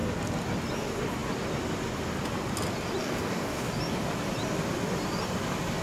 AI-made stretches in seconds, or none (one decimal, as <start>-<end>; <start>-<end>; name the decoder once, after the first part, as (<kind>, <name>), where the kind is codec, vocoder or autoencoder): 3.0-3.7 (codec, DAC)